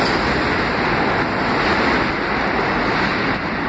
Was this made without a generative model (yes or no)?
yes